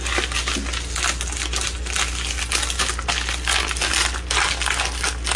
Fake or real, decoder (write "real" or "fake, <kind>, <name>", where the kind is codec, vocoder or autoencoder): real